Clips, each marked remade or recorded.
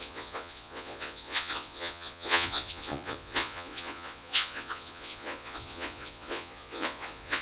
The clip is remade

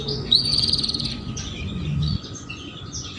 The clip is remade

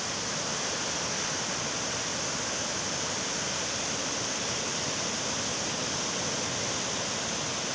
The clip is recorded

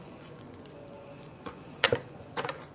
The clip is remade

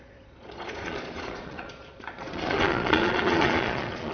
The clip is remade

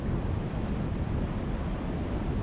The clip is recorded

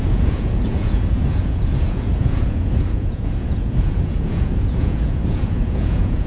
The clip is remade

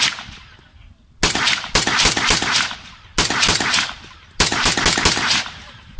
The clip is recorded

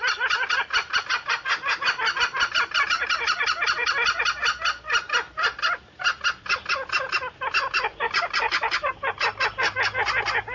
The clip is recorded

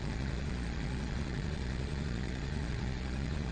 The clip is remade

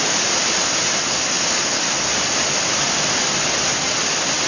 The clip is recorded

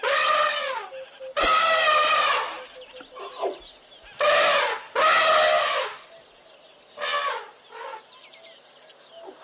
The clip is recorded